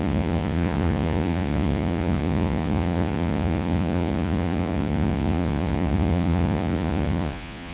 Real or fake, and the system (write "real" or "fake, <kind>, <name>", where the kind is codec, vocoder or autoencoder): fake, vocoder, Vocos